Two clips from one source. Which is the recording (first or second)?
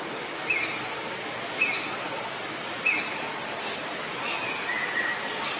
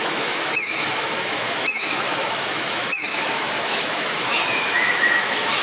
first